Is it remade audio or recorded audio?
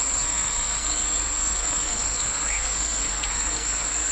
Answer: remade